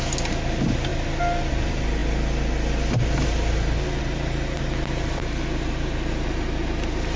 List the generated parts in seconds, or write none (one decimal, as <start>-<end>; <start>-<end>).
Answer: none